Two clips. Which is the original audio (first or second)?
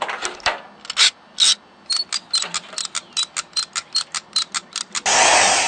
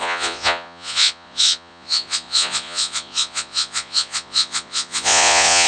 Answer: first